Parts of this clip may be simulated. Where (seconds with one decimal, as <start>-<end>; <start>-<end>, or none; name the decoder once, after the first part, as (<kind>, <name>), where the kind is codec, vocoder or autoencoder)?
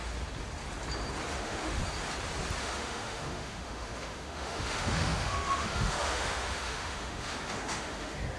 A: 1.4-1.8 (autoencoder, DAC-VAE); 2.6-8.4